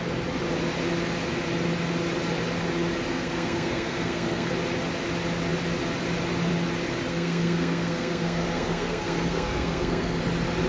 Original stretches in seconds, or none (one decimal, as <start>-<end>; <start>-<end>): 0.0-3.1; 4.5-7.1; 10.2-10.7